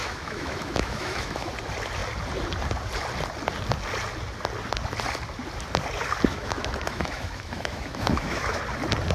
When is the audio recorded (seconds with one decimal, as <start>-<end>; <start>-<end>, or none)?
1.5-6.3; 8.6-9.1